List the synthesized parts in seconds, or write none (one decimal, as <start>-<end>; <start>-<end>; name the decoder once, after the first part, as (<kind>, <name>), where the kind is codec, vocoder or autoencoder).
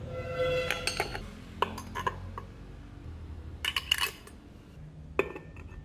none